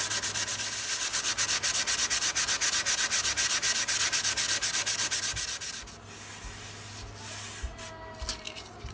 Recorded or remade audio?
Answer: recorded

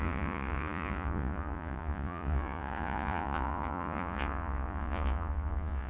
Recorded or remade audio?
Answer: remade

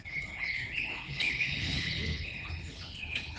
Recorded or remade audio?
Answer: remade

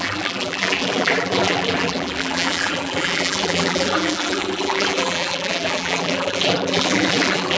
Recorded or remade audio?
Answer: remade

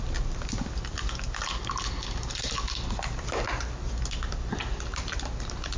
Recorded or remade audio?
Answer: recorded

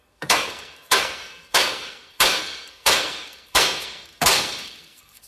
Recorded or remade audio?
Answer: remade